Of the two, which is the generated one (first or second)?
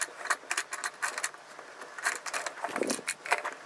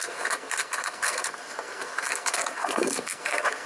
second